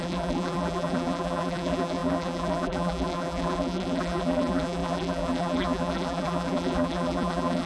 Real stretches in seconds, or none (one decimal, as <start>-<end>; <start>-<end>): none